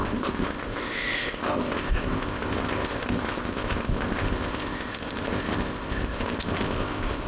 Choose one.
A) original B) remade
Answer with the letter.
B